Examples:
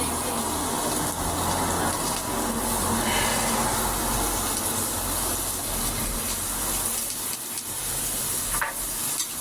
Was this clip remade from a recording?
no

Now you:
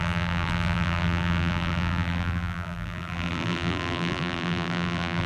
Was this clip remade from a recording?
yes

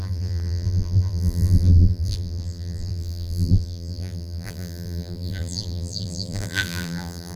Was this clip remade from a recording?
yes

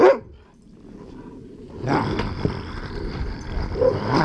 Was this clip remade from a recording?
yes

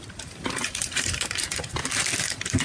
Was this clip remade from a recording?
yes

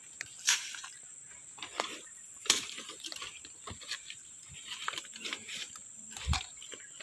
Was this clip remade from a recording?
yes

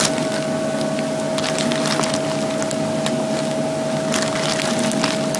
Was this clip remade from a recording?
no